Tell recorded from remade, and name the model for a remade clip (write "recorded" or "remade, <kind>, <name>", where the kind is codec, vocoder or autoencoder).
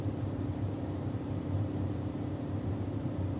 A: remade, vocoder, BigVGAN v2